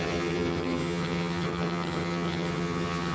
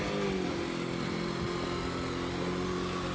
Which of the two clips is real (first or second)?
second